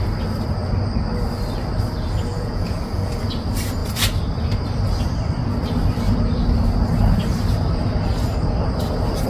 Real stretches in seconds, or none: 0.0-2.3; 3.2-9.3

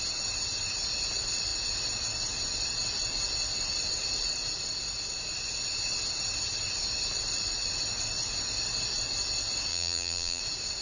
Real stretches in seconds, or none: 0.0-9.7; 10.4-10.8

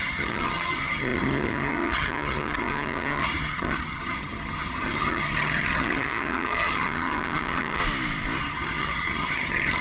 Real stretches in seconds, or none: 7.8-8.4

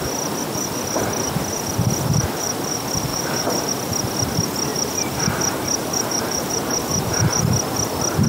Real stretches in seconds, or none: 0.0-3.1; 3.7-4.7; 7.4-8.3

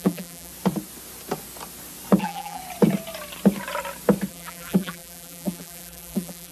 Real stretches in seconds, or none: 0.5-2.2; 2.6-4.3